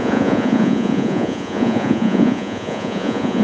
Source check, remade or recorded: remade